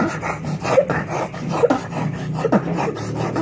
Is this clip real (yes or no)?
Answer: yes